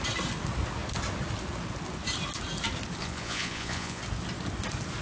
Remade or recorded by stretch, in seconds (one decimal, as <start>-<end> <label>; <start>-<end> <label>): 0.0-3.0 recorded; 3.0-4.0 remade; 4.0-5.0 recorded